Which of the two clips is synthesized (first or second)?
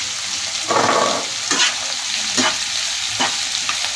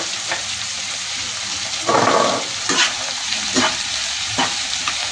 second